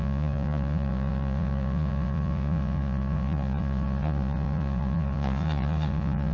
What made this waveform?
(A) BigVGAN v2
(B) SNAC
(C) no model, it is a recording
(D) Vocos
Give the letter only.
D